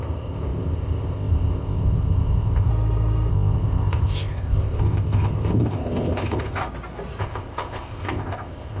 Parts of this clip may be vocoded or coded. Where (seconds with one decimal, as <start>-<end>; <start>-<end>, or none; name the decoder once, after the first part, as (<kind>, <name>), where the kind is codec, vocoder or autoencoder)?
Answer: 0.0-2.7 (codec, ZipCodec); 3.3-6.6; 7.2-8.8